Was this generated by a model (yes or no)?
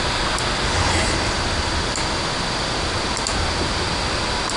no